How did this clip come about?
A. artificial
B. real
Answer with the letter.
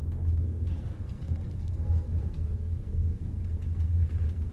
A